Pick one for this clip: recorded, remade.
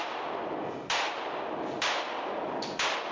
recorded